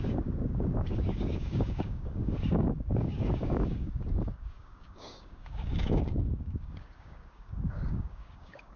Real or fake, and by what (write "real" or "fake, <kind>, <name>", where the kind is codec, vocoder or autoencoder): fake, codec, DAC